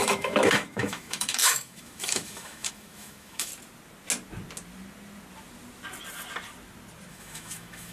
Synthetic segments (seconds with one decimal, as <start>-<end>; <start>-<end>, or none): 0.0-3.5; 7.1-7.9